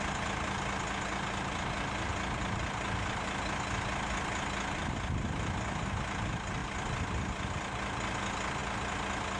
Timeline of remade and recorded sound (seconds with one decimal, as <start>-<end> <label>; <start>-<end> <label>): 0.0-9.4 recorded